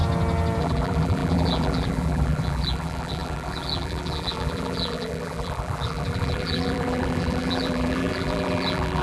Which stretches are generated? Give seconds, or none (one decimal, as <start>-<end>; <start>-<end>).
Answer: 0.6-9.0